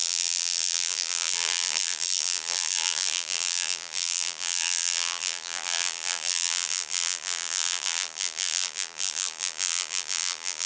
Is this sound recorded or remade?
remade